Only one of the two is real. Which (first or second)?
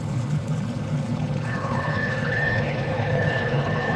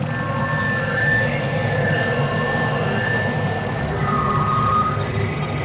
second